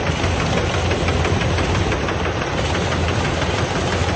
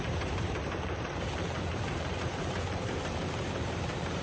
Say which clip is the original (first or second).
first